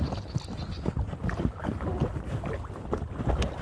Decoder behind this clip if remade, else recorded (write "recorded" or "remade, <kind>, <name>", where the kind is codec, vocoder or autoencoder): remade, vocoder, BigVGAN v2